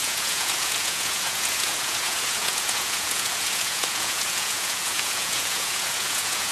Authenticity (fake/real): fake